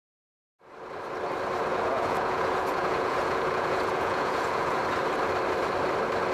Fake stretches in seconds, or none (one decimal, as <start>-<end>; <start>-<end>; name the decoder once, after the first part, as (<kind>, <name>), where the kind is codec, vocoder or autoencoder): 1.7-4.8 (vocoder, Vocos)